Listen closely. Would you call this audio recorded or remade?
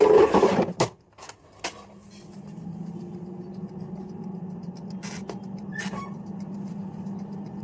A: recorded